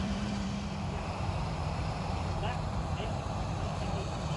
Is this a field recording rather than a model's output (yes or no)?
no